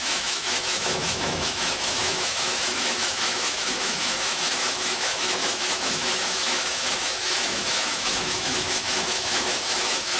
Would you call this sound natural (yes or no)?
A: no